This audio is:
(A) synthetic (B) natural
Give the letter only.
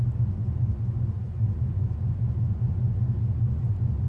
A